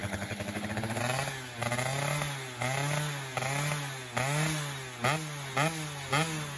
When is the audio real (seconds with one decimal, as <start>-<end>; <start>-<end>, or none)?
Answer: 1.0-6.6

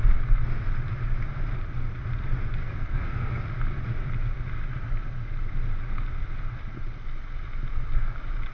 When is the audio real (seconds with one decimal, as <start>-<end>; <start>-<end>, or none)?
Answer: 0.0-2.6; 3.4-8.5